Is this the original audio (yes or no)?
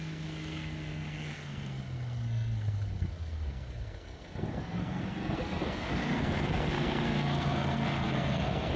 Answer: no